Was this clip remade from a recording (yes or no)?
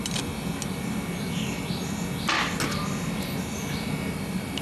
no